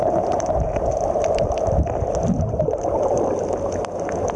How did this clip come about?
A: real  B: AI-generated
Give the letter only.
A